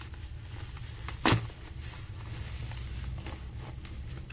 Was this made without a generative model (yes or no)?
yes